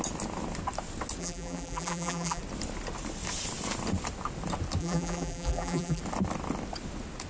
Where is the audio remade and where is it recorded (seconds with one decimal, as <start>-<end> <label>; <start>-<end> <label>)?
0.0-1.2 recorded; 1.2-2.4 remade; 2.4-4.8 recorded; 4.8-6.0 remade; 6.0-7.3 recorded